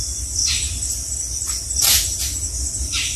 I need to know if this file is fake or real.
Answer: real